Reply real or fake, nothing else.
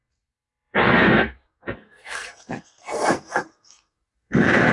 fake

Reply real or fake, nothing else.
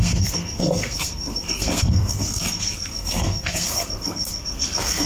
fake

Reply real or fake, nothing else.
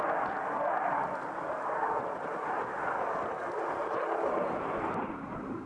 real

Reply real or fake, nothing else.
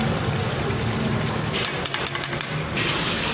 real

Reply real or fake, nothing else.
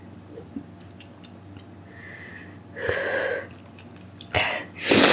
real